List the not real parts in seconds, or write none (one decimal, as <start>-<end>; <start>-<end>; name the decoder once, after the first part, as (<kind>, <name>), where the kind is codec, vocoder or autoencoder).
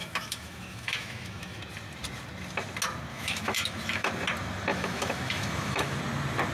0.0-1.6 (autoencoder, DAC-VAE); 3.1-4.1; 4.7-6.0